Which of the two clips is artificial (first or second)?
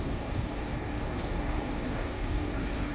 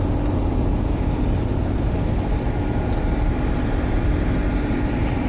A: first